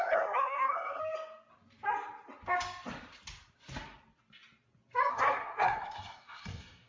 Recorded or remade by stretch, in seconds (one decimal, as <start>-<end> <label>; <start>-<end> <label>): 0.0-1.0 remade; 1.0-5.1 recorded; 5.1-6.9 remade